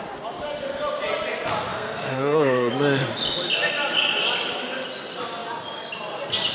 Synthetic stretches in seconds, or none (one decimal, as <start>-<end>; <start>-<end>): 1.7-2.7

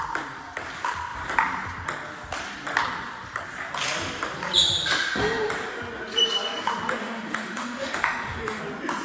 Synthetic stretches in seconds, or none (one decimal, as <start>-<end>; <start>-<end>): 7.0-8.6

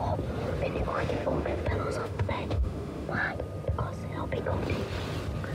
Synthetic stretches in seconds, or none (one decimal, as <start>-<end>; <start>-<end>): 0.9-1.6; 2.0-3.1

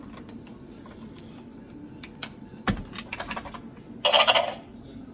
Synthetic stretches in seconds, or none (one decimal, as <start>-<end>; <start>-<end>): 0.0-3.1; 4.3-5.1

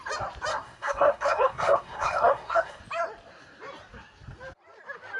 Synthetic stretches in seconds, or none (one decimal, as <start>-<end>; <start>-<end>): 0.5-2.8

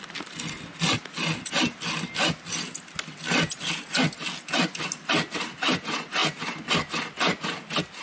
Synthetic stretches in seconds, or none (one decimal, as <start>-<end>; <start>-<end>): none

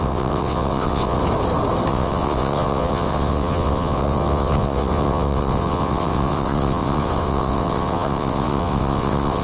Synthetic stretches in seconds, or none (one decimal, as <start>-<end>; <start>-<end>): 0.0-1.2; 1.9-9.4